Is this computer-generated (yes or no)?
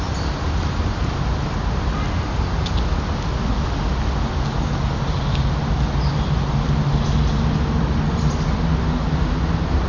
no